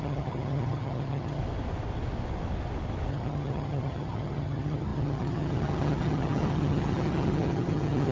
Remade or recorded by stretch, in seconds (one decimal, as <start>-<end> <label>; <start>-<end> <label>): 0.0-1.4 remade; 1.4-3.1 recorded; 3.1-8.1 remade